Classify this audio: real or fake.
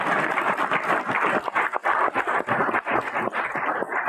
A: real